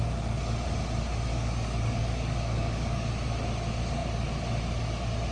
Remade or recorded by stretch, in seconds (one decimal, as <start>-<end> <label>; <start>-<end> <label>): 0.0-1.3 recorded; 1.3-3.1 remade; 3.1-5.3 recorded